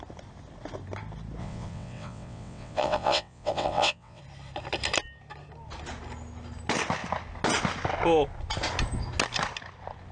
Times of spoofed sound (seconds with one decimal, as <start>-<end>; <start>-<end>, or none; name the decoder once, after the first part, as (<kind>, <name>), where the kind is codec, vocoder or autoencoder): 1.4-4.2 (vocoder, WaveNeXt)